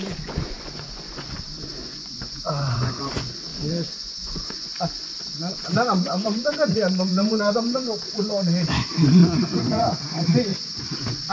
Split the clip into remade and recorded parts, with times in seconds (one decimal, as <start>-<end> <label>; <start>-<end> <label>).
0.0-11.3 remade